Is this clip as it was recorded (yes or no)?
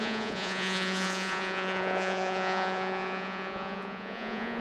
no